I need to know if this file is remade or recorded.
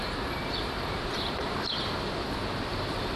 remade